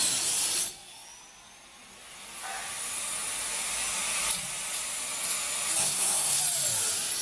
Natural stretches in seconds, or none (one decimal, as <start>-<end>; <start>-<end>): 0.0-5.8; 6.4-7.2